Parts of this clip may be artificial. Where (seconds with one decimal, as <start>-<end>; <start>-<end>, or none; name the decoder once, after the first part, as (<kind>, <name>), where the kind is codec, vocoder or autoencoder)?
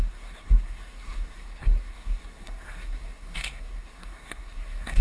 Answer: 0.0-5.0 (codec, SNAC)